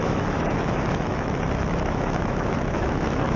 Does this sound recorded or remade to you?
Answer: remade